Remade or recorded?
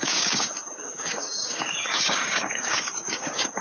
remade